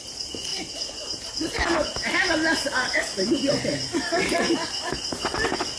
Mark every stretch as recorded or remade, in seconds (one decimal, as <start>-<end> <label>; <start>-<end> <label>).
0.0-5.8 recorded